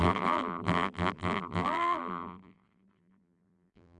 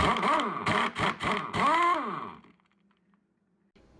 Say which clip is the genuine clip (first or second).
second